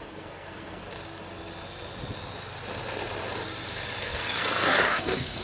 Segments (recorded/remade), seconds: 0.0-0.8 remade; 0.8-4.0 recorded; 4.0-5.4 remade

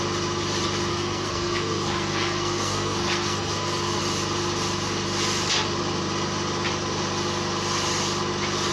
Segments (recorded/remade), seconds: 0.0-0.9 recorded; 0.9-4.0 remade; 4.0-8.7 recorded